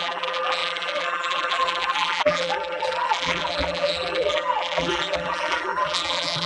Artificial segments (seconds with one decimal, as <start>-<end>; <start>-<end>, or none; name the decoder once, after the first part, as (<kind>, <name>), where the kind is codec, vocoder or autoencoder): 0.0-6.5 (vocoder, BigVGAN v2)